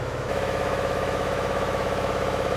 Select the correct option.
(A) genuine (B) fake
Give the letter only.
B